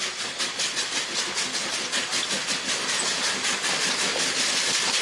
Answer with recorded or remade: recorded